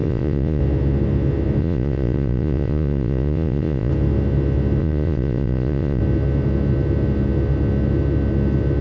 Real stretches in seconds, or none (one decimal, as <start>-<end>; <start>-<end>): 0.6-1.6; 3.9-4.8; 6.0-8.8